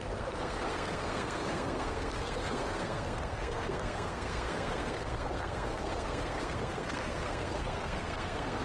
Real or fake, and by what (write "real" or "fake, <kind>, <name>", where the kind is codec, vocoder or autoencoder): fake, codec, SNAC